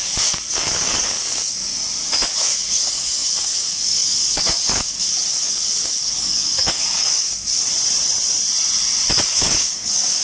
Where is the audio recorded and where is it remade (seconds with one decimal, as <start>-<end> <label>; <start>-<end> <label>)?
0.0-1.7 remade; 1.7-2.3 recorded; 2.3-7.5 remade; 7.5-9.2 recorded; 9.2-10.2 remade